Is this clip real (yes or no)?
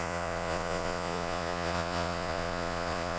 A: no